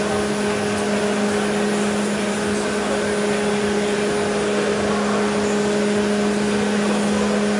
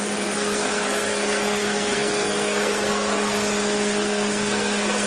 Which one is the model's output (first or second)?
second